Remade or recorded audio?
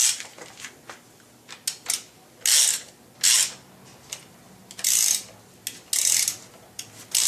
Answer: recorded